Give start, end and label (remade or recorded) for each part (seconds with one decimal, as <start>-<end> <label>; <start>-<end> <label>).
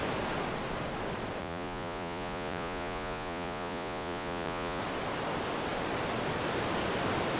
0.0-1.4 recorded; 1.4-4.8 remade; 4.8-7.4 recorded